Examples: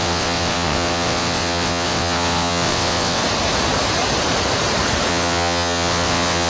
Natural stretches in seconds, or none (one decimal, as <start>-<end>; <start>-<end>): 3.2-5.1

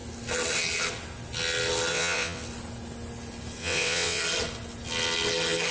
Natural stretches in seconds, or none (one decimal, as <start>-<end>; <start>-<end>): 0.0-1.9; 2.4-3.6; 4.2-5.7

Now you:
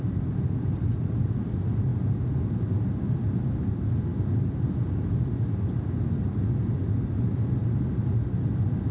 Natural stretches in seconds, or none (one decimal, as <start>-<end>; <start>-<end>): 0.0-8.9

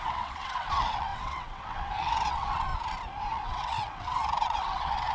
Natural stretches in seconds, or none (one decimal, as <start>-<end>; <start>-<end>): 2.7-3.3